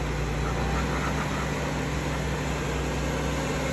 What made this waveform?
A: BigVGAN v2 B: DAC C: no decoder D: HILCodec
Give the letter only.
C